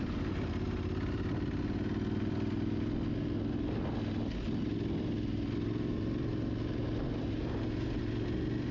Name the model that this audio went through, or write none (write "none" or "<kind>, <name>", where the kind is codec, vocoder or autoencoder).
none